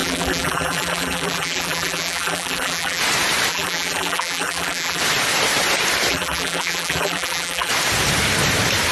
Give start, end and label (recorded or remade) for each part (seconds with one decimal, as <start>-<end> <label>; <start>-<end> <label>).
0.0-3.0 remade; 3.0-3.5 recorded; 3.5-5.0 remade; 5.0-6.1 recorded; 6.1-7.7 remade; 7.7-8.9 recorded